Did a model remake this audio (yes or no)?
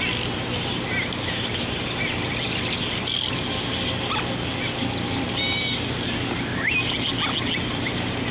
no